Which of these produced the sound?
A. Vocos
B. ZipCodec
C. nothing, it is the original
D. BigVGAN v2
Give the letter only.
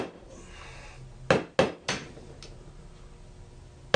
C